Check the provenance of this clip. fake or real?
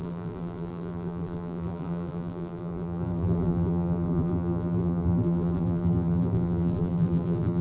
fake